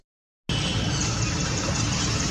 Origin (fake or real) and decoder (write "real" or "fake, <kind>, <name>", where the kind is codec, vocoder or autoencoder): real